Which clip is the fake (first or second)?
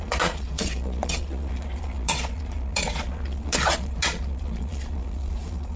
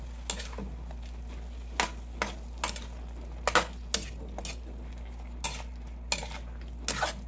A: first